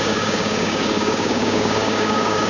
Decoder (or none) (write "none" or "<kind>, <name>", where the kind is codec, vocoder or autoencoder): codec, DAC